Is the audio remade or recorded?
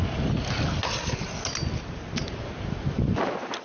recorded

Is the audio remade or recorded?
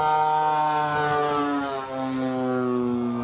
recorded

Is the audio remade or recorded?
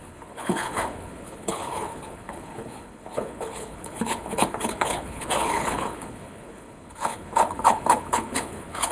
remade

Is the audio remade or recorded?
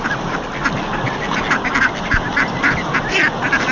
recorded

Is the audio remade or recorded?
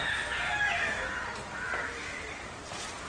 recorded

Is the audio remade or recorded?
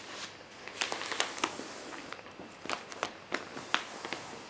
recorded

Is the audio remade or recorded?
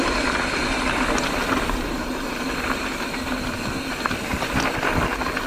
recorded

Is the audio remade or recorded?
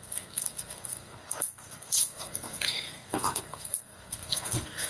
remade